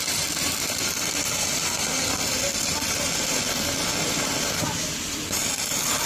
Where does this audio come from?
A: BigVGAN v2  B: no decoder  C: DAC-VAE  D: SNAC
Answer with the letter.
A